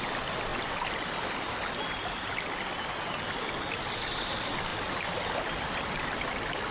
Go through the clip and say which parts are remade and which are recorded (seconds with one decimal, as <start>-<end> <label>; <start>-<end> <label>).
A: 0.0-0.5 recorded; 0.5-1.5 remade; 1.5-4.7 recorded; 4.7-5.9 remade; 5.9-6.7 recorded